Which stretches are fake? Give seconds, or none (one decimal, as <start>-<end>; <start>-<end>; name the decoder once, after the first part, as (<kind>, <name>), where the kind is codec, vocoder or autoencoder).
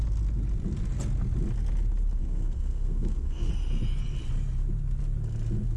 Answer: 2.2-3.5 (codec, SNAC)